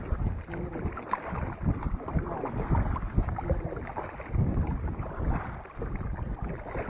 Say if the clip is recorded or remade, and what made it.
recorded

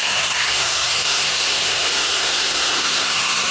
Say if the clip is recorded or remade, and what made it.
remade, codec, SNAC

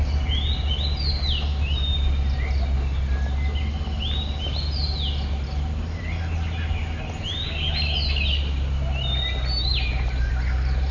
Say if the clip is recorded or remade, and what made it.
recorded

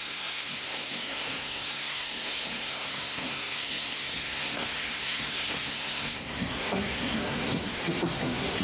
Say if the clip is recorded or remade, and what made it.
remade, codec, SNAC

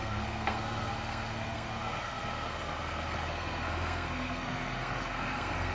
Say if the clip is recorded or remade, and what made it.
remade, codec, SNAC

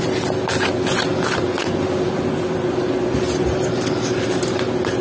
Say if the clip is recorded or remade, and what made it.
recorded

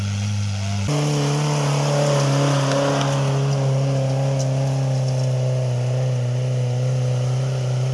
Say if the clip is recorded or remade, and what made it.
recorded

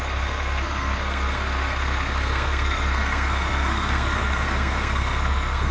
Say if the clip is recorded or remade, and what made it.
remade, codec, SNAC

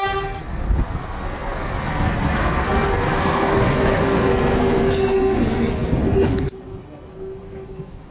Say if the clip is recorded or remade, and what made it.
remade, codec, SNAC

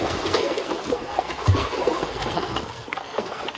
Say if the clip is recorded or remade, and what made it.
remade, codec, SNAC